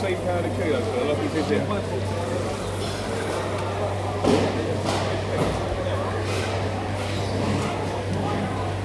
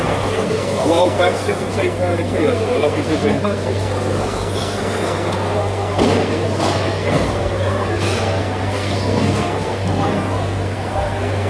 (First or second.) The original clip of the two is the first